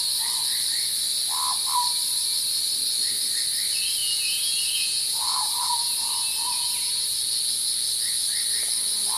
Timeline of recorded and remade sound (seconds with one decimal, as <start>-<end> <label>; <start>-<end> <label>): 0.0-4.0 recorded; 4.0-7.0 remade; 7.0-9.2 recorded